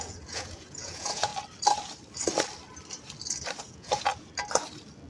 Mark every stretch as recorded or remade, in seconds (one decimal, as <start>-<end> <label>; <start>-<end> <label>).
0.0-1.3 remade; 1.3-3.6 recorded; 3.6-4.1 remade; 4.1-5.1 recorded